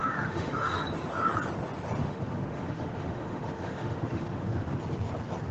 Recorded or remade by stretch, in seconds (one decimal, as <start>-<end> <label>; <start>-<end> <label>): 0.0-0.8 remade; 0.8-2.0 recorded; 2.0-4.8 remade; 4.8-5.5 recorded